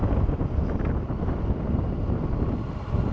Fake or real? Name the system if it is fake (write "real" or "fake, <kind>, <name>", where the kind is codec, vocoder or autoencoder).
real